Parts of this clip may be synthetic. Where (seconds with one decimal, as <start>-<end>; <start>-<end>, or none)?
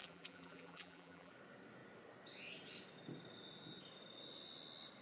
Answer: 0.0-1.3